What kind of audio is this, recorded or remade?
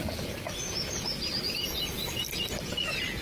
recorded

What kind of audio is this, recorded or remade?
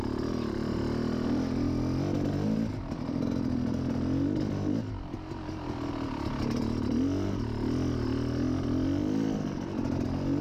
recorded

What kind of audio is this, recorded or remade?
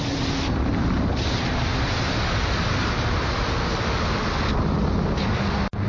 recorded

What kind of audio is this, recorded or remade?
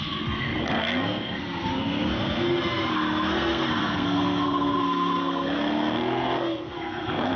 remade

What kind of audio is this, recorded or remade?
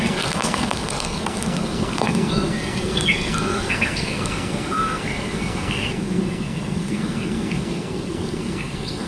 remade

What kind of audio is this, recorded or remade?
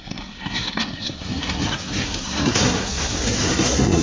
remade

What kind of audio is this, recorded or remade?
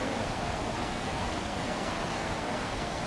remade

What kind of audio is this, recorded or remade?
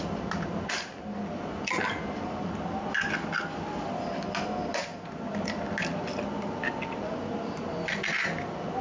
recorded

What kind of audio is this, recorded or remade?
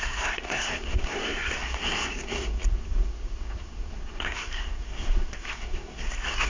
remade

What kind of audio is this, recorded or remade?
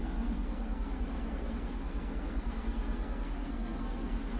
remade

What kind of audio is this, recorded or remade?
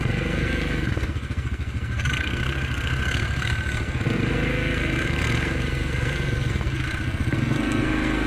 remade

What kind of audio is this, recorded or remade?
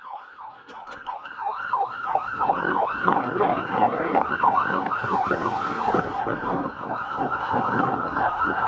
remade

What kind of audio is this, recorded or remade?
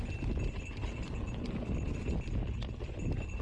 recorded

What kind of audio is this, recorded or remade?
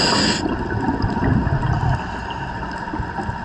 recorded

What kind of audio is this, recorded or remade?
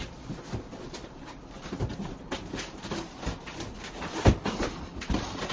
recorded